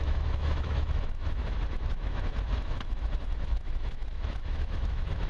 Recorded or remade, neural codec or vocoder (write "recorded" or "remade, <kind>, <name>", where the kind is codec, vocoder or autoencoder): remade, autoencoder, DAC-VAE